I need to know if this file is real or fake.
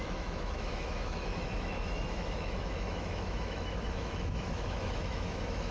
fake